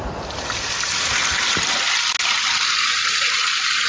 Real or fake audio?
real